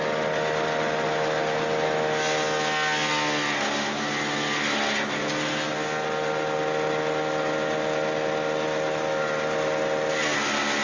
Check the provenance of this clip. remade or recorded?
recorded